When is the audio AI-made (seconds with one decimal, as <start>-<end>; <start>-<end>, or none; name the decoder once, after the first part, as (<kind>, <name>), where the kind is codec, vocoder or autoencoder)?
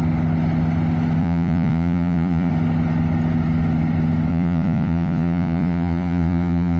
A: 1.2-2.5 (vocoder, Vocos); 4.3-6.8